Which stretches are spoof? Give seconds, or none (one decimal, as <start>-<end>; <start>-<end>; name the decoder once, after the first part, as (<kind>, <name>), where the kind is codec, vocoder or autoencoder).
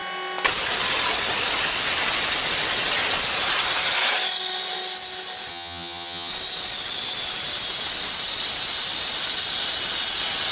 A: 5.5-6.3 (vocoder, HiFi-GAN)